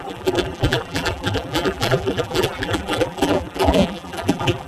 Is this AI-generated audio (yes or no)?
yes